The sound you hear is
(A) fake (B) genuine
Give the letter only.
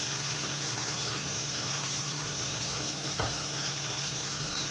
A